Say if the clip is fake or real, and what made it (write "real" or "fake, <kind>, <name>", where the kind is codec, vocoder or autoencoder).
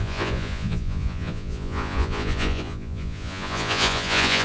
fake, vocoder, Vocos